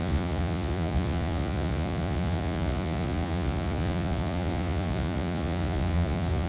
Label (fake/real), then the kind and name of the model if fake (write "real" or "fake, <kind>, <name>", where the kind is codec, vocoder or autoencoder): fake, vocoder, Vocos